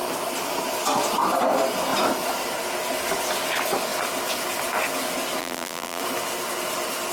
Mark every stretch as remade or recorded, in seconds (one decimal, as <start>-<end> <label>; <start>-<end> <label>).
0.0-5.4 recorded; 5.4-6.0 remade; 6.0-7.1 recorded